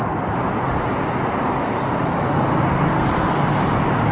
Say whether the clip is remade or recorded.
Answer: recorded